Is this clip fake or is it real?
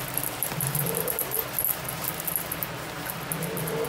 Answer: real